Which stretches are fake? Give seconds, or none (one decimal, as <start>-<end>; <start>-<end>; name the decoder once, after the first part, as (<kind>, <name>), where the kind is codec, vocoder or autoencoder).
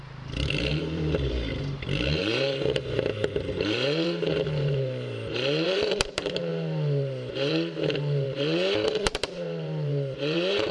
0.0-10.7 (vocoder, BigVGAN v2)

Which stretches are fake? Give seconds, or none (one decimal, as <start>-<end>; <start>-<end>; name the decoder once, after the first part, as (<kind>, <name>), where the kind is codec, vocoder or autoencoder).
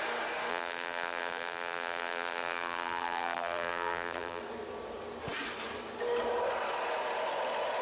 0.5-4.4 (vocoder, BigVGAN v2)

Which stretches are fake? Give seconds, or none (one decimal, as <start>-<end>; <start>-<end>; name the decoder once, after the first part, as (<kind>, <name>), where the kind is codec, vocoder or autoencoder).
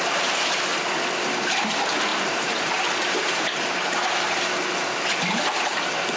2.1-4.4 (vocoder, BigVGAN v2)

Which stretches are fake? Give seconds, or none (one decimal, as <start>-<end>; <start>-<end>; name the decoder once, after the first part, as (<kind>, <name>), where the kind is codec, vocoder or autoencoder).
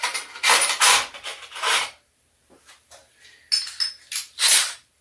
0.0-3.0 (vocoder, BigVGAN v2); 4.2-5.0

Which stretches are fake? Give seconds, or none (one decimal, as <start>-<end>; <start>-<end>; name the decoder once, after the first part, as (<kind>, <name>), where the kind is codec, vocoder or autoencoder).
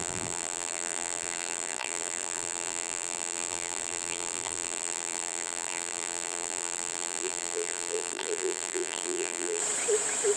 0.0-9.6 (vocoder, BigVGAN v2)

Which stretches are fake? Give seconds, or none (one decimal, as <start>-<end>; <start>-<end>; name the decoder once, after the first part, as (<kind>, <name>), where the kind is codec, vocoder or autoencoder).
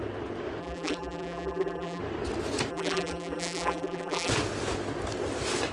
0.6-2.0 (vocoder, BigVGAN v2); 2.7-4.3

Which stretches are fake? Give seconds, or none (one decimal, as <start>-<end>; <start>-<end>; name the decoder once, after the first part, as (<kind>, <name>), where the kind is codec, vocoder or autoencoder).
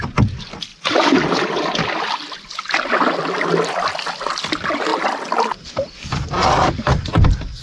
4.9-7.6 (vocoder, BigVGAN v2)